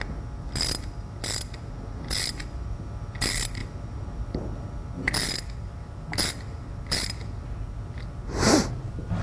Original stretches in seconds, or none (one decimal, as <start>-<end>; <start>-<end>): 0.0-9.2